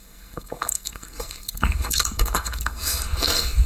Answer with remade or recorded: remade